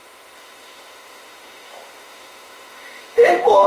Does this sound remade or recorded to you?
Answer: remade